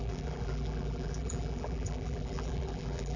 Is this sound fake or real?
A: fake